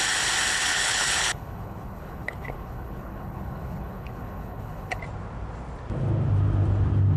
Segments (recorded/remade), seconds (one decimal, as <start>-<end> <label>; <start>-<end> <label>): 0.0-0.7 recorded; 0.7-5.0 remade; 5.0-7.2 recorded